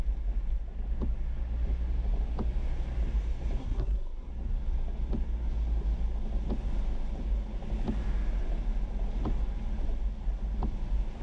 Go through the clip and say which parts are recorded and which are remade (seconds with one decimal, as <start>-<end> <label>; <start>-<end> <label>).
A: 0.0-3.6 recorded; 3.6-4.3 remade; 4.3-11.2 recorded